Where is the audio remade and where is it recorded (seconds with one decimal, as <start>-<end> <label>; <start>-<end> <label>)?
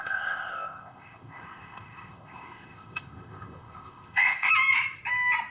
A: 0.0-4.5 remade; 4.5-5.5 recorded